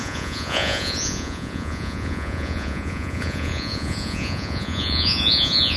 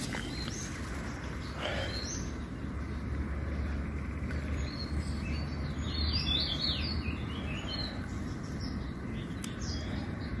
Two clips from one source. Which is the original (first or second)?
second